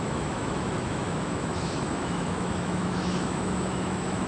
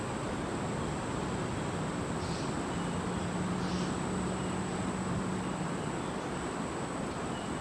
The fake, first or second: first